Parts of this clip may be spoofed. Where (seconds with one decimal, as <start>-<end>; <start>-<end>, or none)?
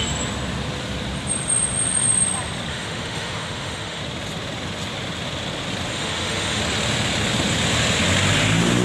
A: 2.7-4.0; 5.9-6.6